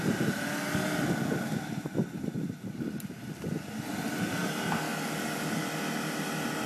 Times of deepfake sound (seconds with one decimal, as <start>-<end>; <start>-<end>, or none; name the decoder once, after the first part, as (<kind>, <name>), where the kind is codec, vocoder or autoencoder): none

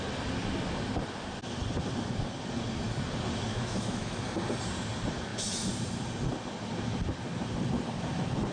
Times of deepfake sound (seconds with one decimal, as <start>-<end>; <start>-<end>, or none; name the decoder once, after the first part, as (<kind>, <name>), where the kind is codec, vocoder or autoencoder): 3.5-4.2 (autoencoder, DAC-VAE)